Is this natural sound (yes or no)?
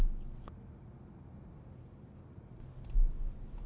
yes